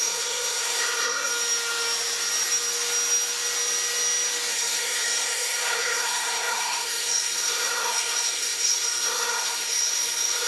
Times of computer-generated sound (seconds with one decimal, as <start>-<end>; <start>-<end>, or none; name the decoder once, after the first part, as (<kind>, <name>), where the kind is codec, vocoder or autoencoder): 0.0-1.3 (codec, SNAC); 4.5-10.5